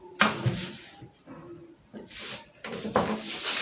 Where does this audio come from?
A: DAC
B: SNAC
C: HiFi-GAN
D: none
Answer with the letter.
D